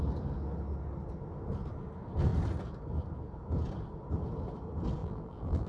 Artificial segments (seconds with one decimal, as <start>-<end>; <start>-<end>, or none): 5.0-5.7